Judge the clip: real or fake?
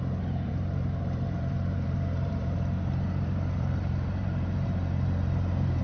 fake